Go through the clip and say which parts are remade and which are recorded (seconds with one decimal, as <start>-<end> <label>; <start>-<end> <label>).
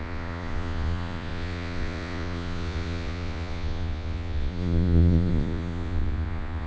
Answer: 0.0-6.7 remade